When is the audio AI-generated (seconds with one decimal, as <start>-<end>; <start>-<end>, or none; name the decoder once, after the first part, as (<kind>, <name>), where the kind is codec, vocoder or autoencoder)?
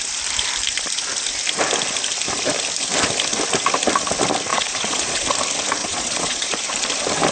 4.5-5.3 (vocoder, Vocos); 5.8-6.6